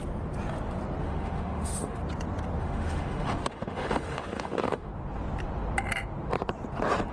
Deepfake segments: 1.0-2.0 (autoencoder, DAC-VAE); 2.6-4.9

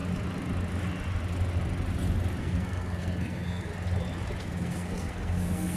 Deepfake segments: 2.4-3.7 (codec, SNAC); 4.4-5.8

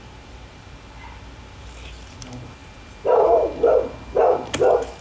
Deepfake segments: none